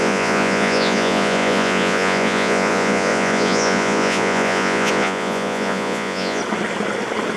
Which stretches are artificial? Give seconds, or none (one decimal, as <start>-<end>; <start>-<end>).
0.0-6.4